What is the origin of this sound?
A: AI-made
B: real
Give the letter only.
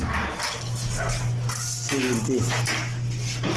B